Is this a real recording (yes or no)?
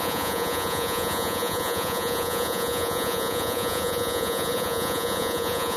no